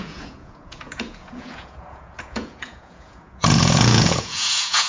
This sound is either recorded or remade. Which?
remade